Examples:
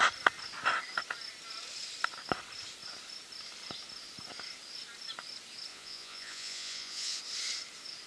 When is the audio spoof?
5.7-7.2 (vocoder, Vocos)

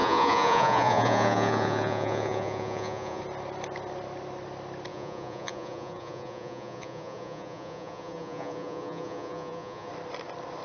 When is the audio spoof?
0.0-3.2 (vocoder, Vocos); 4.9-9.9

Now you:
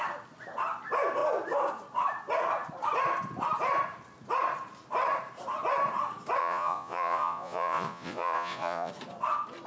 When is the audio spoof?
6.4-8.9 (vocoder, Vocos)

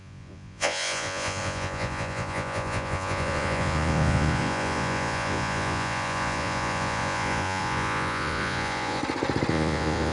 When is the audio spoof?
0.0-9.0 (vocoder, Vocos); 9.5-10.1

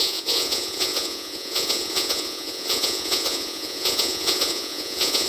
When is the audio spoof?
0.0-5.3 (vocoder, Vocos)

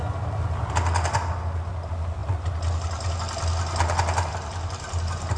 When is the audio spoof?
none

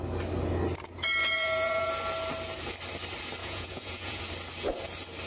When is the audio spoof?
1.2-1.9 (vocoder, Vocos); 3.4-4.2

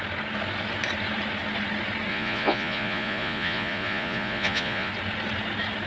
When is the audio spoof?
2.1-4.9 (vocoder, Vocos)